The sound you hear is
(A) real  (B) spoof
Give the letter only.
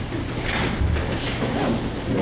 A